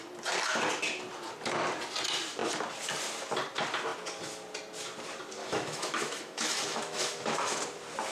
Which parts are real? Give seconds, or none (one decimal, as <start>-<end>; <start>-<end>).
0.0-5.4; 7.6-8.1